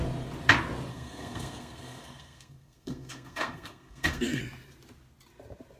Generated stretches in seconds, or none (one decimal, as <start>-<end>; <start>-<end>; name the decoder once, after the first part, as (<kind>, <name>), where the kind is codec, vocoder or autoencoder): 0.9-4.4 (codec, SNAC)